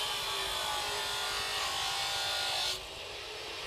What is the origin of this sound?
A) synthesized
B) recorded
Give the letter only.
B